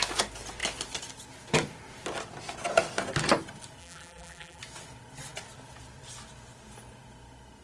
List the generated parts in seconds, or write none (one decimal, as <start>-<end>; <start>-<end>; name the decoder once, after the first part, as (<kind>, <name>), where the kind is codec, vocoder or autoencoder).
3.8-4.6 (vocoder, BigVGAN v2)